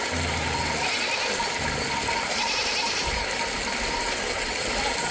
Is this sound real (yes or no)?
yes